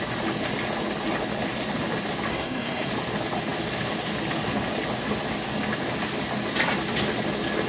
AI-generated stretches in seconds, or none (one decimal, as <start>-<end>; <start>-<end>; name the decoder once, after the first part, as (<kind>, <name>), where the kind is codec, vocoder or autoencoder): 2.3-2.9 (codec, SNAC)